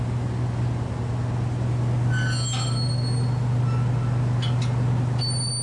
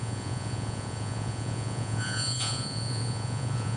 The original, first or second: first